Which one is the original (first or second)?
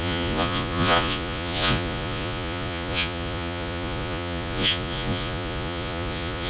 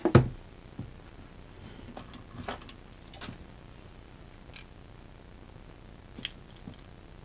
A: second